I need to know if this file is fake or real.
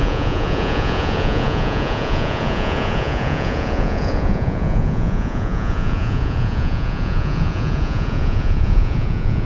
fake